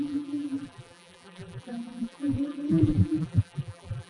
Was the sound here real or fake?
fake